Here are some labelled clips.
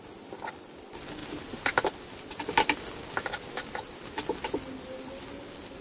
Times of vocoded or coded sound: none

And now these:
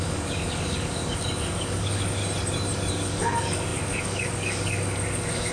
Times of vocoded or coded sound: 0.0-2.2 (codec, DAC); 2.9-5.5

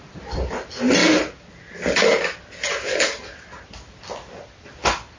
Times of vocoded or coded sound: none

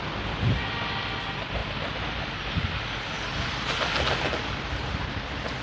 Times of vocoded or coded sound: none